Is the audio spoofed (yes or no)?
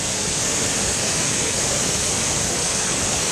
yes